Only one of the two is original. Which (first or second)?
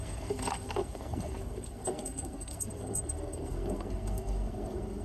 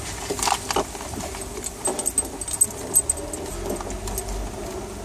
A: second